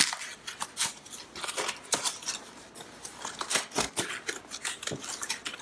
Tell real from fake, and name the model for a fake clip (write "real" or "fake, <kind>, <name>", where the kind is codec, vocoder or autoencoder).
real